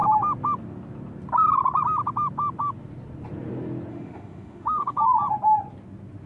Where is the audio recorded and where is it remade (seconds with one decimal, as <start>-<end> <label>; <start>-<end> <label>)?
0.0-3.9 recorded; 3.9-5.0 remade; 5.0-6.3 recorded